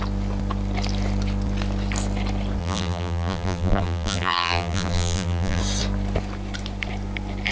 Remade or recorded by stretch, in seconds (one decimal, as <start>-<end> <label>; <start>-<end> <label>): 0.0-2.6 recorded; 2.6-5.6 remade; 5.6-7.5 recorded